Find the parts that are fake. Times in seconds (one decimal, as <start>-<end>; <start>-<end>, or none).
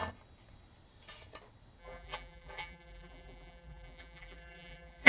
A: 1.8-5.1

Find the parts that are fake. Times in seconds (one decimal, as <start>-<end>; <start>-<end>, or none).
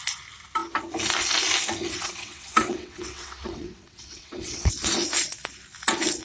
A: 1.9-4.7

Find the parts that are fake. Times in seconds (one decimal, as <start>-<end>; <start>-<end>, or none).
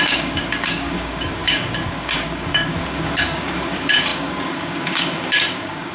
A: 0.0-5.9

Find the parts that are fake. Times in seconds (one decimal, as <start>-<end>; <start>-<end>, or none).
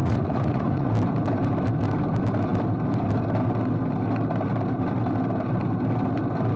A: 0.0-0.9